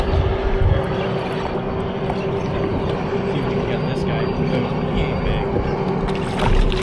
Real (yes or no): yes